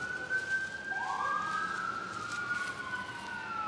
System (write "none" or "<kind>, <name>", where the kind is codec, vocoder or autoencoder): none